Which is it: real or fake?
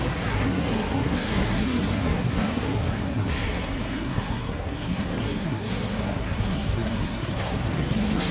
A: fake